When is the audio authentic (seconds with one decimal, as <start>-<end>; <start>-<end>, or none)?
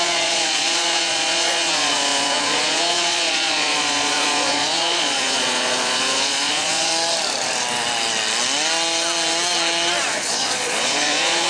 6.9-10.1